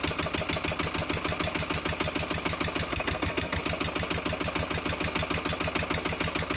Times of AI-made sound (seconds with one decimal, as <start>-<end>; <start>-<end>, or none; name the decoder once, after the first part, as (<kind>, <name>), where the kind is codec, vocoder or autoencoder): 2.9-3.6 (codec, SNAC)